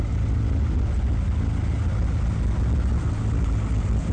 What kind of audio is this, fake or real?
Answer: real